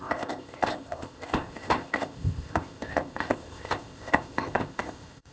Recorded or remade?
remade